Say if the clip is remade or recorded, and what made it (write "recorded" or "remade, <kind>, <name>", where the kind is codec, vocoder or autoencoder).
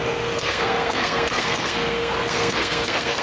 remade, codec, SNAC